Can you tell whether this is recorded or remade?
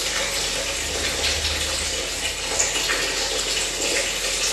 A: recorded